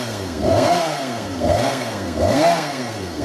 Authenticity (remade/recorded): remade